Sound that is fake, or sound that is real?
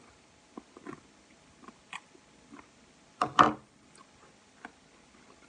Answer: real